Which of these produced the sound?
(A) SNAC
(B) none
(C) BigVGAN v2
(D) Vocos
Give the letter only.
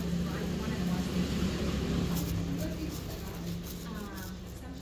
B